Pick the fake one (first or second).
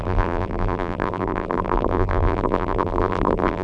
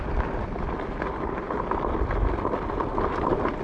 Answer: first